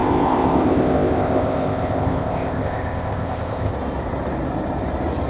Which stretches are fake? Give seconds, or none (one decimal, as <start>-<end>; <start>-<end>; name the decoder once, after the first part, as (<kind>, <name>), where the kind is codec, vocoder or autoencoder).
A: 0.0-3.7 (codec, ZipCodec)